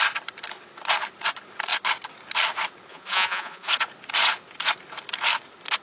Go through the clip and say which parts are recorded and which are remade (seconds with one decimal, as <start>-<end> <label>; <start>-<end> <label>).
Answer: 0.0-2.9 recorded; 2.9-3.7 remade; 3.7-5.8 recorded